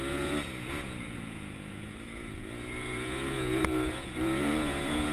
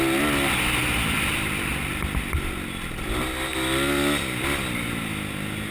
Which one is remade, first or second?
first